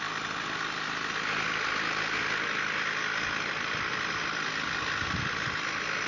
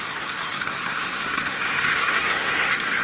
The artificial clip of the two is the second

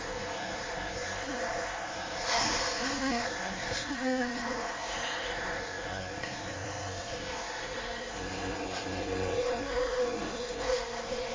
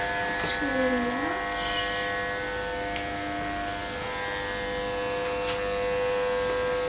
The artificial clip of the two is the first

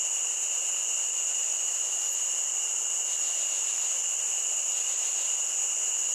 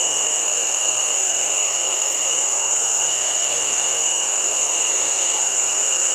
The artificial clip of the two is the second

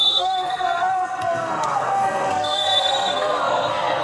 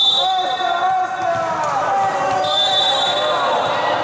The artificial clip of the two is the first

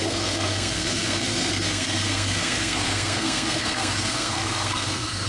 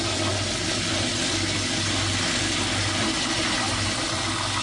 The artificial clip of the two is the first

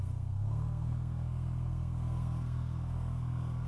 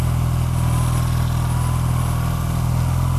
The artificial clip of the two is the first